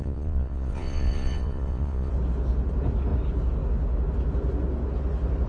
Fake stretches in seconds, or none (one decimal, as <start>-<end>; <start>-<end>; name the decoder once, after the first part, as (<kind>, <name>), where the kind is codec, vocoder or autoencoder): 0.0-2.1 (vocoder, Vocos)